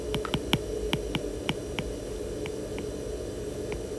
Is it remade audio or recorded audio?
recorded